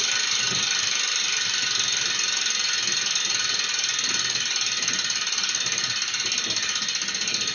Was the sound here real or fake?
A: real